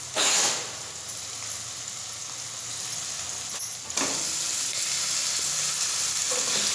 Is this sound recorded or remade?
recorded